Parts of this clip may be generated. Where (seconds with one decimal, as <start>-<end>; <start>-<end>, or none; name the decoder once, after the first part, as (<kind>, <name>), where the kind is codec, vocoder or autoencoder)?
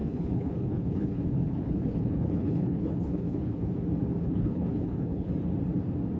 0.0-3.7 (codec, HILCodec); 4.2-5.3